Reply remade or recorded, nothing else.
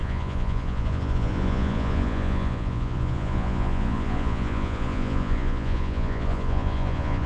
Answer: remade